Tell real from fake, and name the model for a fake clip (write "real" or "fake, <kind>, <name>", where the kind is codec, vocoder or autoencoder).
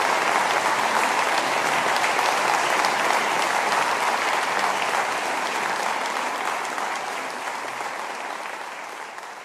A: real